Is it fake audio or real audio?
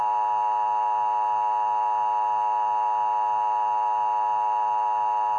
fake